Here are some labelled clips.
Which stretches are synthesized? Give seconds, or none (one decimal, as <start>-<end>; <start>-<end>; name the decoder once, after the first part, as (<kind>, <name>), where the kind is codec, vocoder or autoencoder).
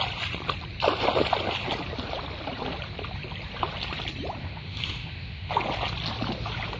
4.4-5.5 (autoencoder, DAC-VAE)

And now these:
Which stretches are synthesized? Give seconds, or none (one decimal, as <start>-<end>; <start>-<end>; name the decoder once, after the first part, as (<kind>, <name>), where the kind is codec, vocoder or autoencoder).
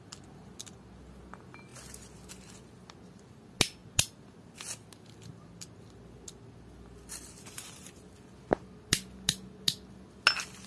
none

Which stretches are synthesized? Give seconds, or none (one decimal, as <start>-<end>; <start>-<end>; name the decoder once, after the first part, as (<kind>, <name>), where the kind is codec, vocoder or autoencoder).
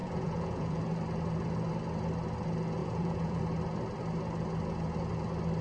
0.0-0.8 (vocoder, Vocos); 2.8-3.4